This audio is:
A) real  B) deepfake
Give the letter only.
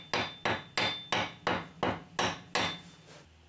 A